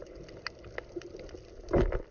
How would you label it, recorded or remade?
recorded